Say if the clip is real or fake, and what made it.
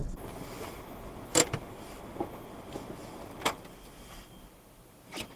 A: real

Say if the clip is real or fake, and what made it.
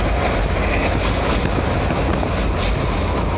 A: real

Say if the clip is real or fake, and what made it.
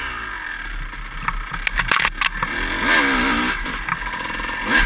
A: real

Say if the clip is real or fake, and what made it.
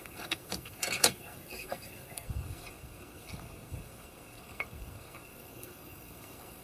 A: fake, codec, SNAC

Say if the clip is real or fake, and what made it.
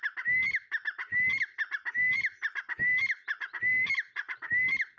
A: real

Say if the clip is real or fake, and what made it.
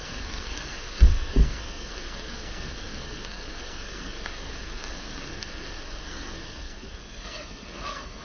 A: fake, codec, SNAC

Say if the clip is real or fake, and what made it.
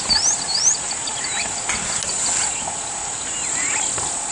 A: real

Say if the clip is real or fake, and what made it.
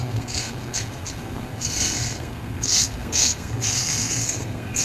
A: fake, codec, SNAC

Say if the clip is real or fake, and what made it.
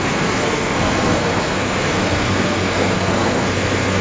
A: fake, codec, SNAC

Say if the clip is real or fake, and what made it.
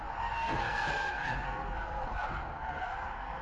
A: fake, codec, SNAC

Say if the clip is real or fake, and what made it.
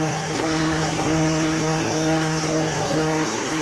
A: fake, codec, SNAC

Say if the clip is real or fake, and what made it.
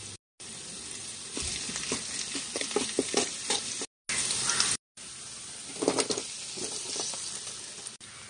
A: real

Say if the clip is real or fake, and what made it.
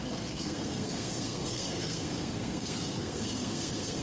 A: fake, codec, SNAC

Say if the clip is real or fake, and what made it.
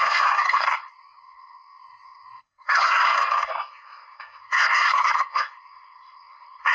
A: fake, codec, SNAC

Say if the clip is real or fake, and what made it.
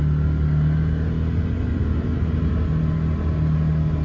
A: real